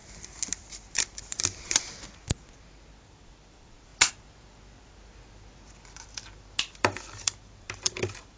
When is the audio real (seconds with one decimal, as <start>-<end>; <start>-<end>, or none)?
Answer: 0.0-3.0; 3.9-6.6

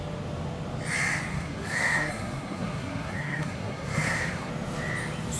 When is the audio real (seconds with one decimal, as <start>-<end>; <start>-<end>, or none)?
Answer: 0.0-1.3; 4.5-5.4

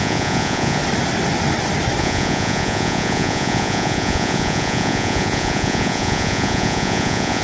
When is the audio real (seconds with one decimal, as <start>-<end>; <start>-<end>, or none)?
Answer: 0.8-2.0

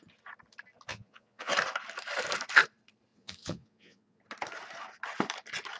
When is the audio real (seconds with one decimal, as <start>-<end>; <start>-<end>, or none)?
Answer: 0.0-0.9; 1.5-3.1; 4.2-5.8

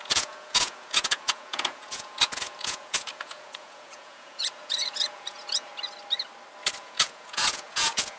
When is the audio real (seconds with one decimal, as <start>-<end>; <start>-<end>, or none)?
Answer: 5.7-6.8

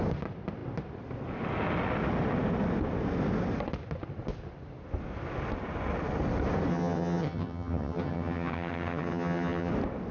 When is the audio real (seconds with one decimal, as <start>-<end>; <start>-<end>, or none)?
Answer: 0.0-6.7; 9.7-10.1

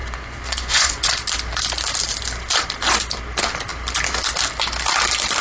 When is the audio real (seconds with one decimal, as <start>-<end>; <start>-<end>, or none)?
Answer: 1.1-5.4